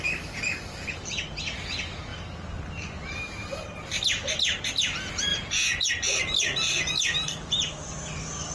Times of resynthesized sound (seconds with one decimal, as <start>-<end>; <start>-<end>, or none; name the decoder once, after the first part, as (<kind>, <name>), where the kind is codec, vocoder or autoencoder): 5.3-5.9 (vocoder, Vocos)